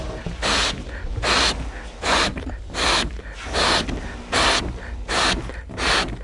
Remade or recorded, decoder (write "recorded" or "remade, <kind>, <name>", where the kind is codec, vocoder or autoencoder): recorded